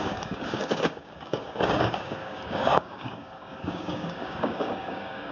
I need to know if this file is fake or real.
fake